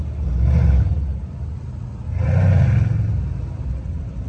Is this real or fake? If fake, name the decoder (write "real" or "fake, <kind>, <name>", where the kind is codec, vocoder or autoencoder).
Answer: real